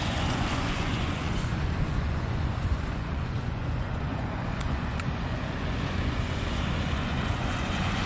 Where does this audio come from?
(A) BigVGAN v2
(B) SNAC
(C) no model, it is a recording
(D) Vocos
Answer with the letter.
D